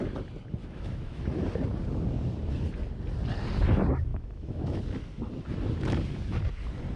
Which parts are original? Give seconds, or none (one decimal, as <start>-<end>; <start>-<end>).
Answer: 0.0-0.6; 1.2-4.1; 4.8-7.0